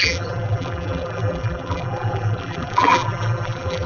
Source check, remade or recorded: remade